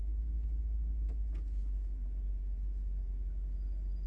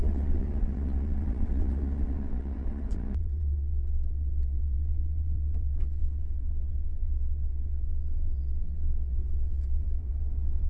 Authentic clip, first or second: first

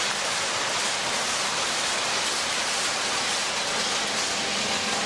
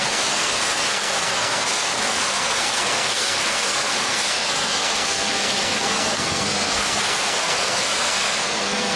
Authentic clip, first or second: first